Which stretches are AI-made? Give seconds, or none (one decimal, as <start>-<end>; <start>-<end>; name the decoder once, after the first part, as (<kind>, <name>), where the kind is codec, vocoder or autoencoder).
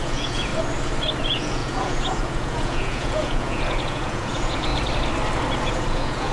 0.0-0.5 (vocoder, Vocos); 1.2-4.7; 5.7-6.3